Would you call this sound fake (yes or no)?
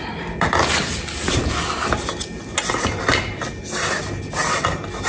no